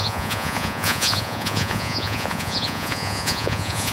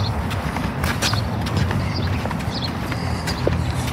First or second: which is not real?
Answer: first